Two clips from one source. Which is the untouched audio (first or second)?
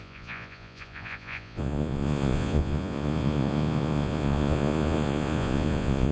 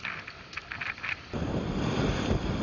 second